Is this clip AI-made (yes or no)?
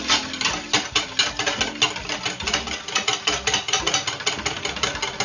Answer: no